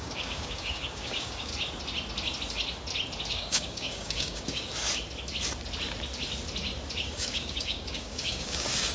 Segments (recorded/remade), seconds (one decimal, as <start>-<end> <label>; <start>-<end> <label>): 0.0-1.5 remade; 1.5-3.3 recorded; 3.3-4.7 remade; 4.7-7.0 recorded; 7.0-8.9 remade